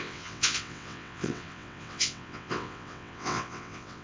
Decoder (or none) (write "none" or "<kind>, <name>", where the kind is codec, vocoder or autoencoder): vocoder, WaveNeXt